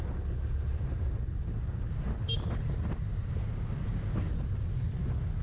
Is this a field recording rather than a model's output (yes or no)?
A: yes